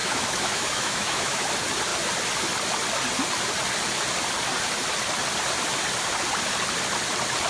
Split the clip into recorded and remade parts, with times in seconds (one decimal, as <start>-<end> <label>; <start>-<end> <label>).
0.0-1.5 remade; 1.5-7.5 recorded